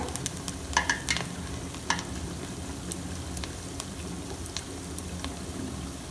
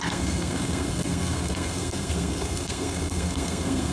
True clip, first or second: first